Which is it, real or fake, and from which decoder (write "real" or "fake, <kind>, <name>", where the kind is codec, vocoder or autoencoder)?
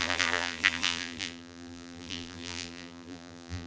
fake, vocoder, BigVGAN v2